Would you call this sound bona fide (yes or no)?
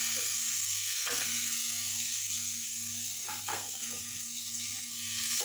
no